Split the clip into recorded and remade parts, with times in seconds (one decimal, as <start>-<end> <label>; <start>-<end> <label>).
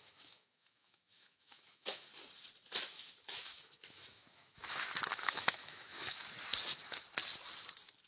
0.0-2.1 remade; 2.1-3.3 recorded; 3.3-4.6 remade; 4.6-5.1 recorded; 5.1-6.2 remade; 6.2-8.1 recorded